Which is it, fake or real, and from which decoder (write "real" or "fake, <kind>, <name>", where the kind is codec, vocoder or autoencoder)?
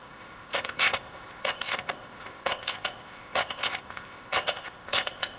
fake, codec, ZipCodec